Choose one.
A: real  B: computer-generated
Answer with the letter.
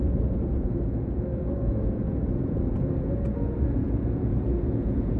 B